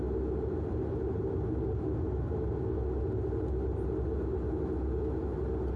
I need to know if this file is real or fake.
real